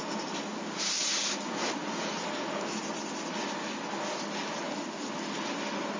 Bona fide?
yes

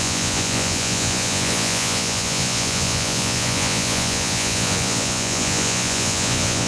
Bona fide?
no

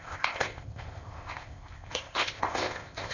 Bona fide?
no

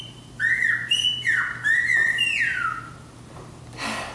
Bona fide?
yes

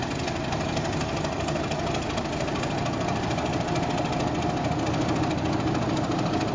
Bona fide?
yes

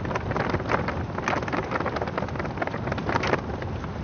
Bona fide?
yes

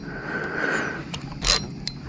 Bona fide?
yes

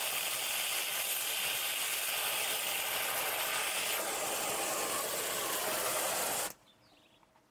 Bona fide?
yes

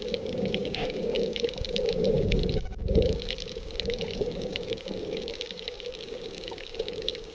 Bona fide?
no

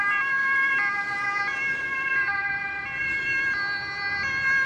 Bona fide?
yes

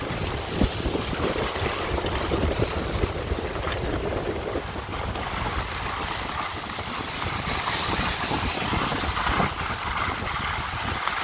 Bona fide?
yes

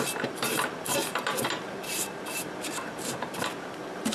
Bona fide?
no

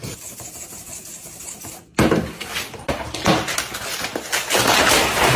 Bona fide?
yes